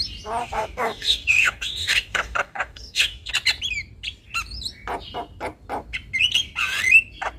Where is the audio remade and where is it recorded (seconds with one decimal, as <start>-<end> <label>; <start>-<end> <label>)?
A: 0.0-0.4 recorded; 0.4-3.3 remade; 3.3-7.4 recorded